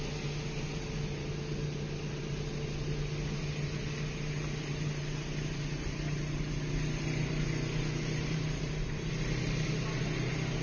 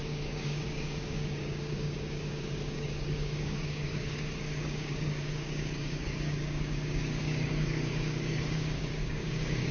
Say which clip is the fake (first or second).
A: second